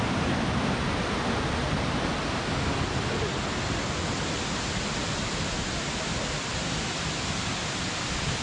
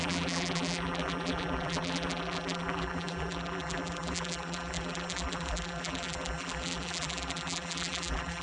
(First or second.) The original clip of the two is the first